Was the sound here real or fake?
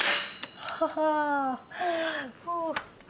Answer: real